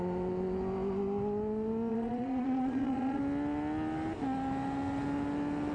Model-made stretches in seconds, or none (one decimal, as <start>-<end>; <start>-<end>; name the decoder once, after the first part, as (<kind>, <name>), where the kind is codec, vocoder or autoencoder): 1.9-3.2 (vocoder, Vocos)